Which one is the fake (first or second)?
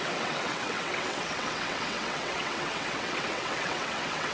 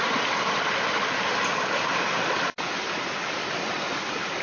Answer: first